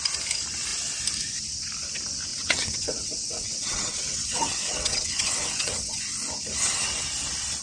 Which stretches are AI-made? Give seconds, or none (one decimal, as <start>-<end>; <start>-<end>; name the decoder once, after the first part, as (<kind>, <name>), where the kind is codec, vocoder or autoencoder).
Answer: 2.3-6.0 (vocoder, WaveNeXt)